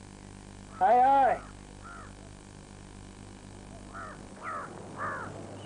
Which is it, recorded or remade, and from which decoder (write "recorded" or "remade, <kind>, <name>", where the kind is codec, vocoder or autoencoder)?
recorded